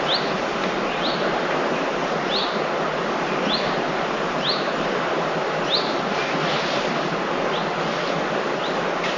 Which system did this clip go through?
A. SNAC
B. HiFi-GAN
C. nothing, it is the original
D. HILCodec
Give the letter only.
C